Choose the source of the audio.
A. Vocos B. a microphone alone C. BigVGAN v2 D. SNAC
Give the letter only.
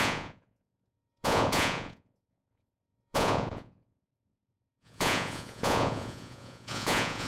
A